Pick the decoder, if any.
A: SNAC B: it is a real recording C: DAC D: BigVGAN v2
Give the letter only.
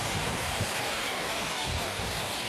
C